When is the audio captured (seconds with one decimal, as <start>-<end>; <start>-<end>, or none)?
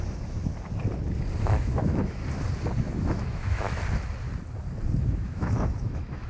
0.5-1.4; 2.2-2.8; 3.8-5.0